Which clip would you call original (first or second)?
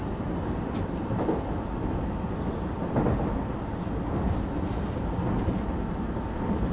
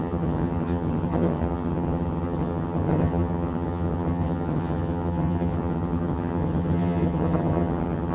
first